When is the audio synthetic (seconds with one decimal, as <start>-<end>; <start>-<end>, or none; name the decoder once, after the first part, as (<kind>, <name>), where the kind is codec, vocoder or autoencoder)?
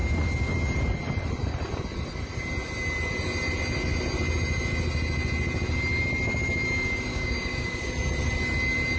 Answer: 7.1-7.9 (codec, DAC)